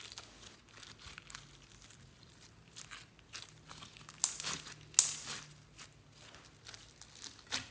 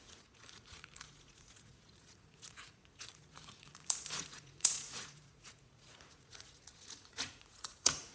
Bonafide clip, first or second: first